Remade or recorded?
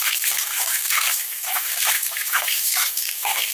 remade